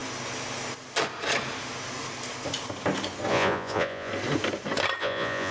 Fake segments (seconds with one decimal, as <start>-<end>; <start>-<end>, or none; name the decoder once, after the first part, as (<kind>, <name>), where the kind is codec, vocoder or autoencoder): 3.3-4.1 (vocoder, Vocos); 5.0-5.5